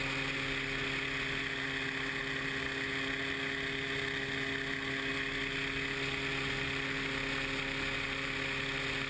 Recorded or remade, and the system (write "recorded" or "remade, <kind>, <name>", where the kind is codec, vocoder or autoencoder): recorded